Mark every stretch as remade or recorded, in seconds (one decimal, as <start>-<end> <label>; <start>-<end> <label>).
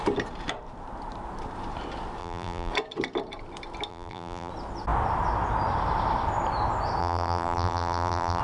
0.0-2.2 recorded; 2.2-2.7 remade; 2.7-3.9 recorded; 3.9-4.5 remade; 4.5-7.0 recorded; 7.0-8.4 remade